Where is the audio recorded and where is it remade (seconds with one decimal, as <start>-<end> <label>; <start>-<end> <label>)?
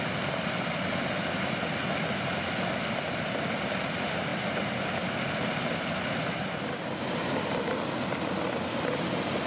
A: 0.0-9.5 recorded